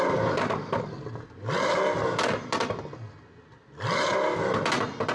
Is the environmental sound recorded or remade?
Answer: recorded